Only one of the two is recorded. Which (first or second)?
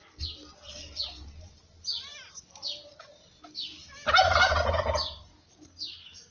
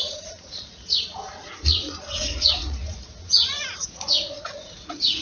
first